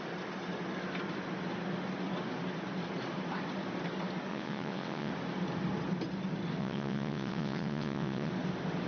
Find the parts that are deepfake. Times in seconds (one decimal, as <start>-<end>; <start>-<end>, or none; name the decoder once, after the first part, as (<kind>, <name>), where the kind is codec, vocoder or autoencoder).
4.3-5.1 (vocoder, WaveNeXt); 6.6-8.3